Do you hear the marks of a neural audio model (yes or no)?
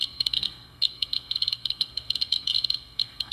yes